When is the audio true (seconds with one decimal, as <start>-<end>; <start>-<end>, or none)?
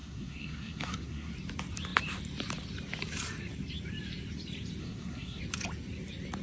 1.3-4.8; 5.4-6.4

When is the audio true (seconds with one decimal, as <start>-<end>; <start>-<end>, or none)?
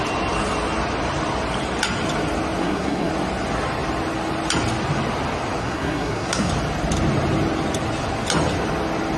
0.0-2.6; 3.1-5.6; 6.5-9.2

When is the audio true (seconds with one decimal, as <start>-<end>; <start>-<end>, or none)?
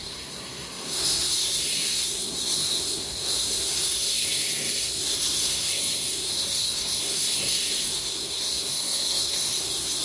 none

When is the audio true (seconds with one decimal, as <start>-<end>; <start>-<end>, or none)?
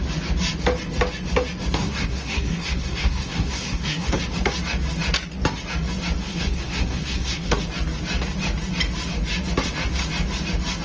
0.0-1.8; 4.2-6.2; 7.6-10.8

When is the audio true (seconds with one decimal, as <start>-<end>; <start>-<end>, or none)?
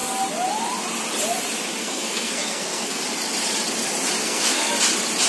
0.0-1.8; 3.0-4.2; 4.7-5.3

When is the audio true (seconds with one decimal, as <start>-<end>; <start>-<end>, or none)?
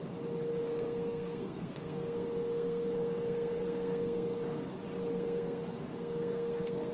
0.0-0.5; 4.6-5.1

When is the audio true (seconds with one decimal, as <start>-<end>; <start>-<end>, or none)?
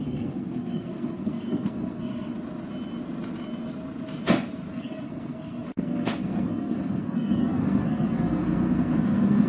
2.3-4.7